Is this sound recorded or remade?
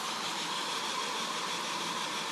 remade